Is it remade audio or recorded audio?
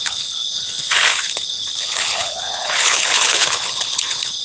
remade